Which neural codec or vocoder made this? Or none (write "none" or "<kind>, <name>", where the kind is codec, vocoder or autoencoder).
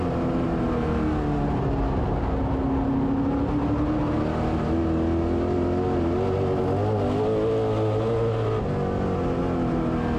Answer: none